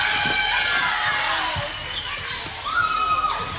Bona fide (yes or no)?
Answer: yes